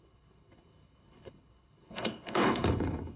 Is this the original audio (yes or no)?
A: no